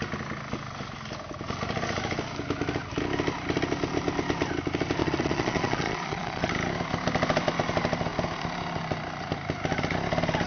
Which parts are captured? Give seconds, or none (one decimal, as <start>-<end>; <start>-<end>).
0.0-5.0; 6.5-10.5